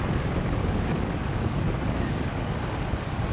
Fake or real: fake